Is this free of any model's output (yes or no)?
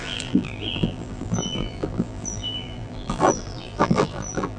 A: no